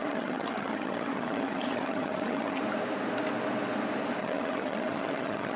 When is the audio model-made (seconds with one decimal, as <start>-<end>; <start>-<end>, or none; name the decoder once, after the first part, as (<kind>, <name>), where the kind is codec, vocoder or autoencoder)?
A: 0.0-2.6 (vocoder, HiFi-GAN); 4.2-5.6